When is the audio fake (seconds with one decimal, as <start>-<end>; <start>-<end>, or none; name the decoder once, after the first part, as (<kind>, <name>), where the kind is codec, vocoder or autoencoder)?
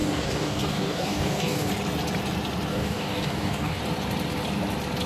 0.0-1.7 (codec, DAC); 2.7-3.8